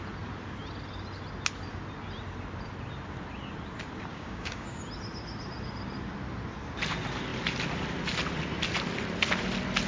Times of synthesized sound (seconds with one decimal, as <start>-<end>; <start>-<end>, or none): 4.1-4.8